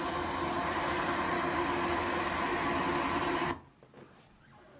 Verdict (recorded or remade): recorded